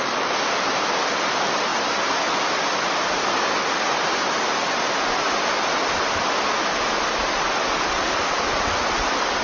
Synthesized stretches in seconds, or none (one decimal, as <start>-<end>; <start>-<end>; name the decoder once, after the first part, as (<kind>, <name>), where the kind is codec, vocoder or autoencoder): none